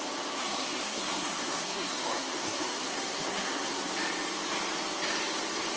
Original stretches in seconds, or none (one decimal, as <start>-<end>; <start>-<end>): 0.0-0.4; 3.9-5.8